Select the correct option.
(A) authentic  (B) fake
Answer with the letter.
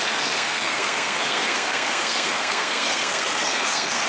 B